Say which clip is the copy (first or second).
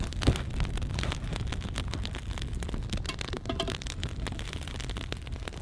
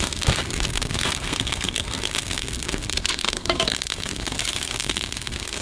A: second